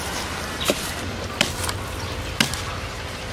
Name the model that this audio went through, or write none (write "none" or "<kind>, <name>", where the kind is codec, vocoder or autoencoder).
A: none